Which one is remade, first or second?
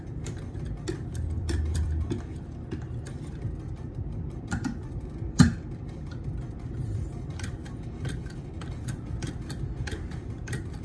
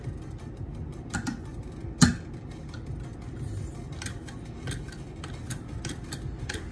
first